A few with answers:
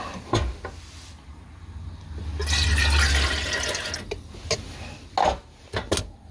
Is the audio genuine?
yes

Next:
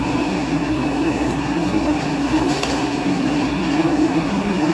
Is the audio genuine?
no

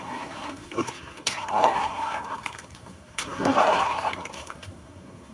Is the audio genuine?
no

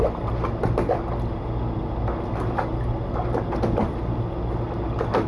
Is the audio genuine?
yes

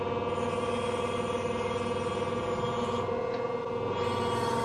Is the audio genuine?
yes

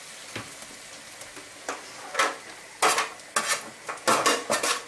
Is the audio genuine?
yes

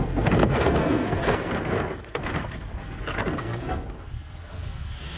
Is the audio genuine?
no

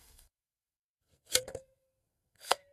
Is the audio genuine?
no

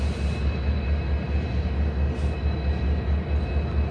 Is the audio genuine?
yes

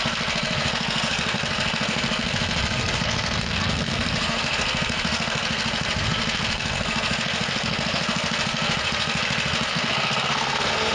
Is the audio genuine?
no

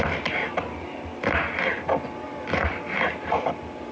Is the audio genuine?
yes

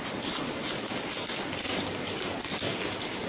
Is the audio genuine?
yes